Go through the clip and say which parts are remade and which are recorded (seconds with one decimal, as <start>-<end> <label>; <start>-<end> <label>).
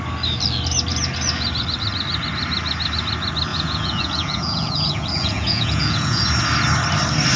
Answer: 0.0-3.5 recorded; 3.5-6.2 remade; 6.2-7.4 recorded